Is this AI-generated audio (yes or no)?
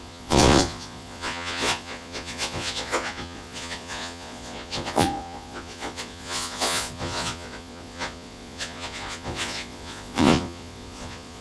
yes